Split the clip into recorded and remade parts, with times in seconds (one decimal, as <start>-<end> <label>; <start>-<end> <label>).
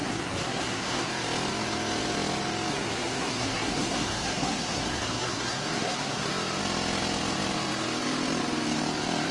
0.0-1.1 remade; 1.1-2.7 recorded; 2.7-6.3 remade; 6.3-9.3 recorded